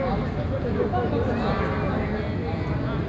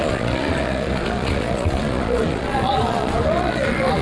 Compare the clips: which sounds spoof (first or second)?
second